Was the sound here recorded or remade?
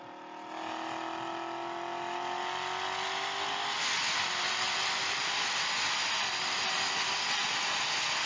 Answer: recorded